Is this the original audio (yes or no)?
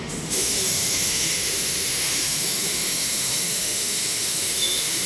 no